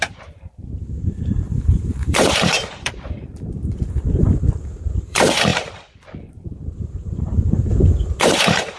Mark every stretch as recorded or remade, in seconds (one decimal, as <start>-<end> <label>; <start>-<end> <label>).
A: 0.0-5.5 remade; 5.5-6.3 recorded; 6.3-7.7 remade; 7.7-8.2 recorded; 8.2-8.8 remade